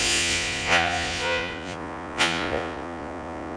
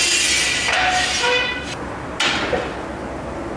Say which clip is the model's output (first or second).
first